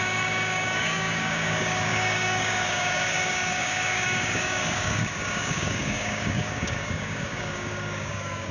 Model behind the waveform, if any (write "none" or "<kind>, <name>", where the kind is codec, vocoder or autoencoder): codec, DAC